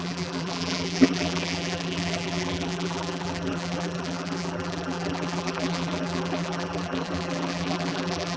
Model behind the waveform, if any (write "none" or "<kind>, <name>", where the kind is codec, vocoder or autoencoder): vocoder, BigVGAN v2